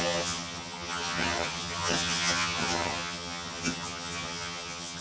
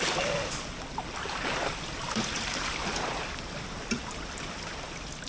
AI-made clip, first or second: first